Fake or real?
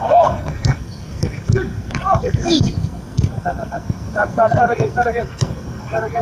fake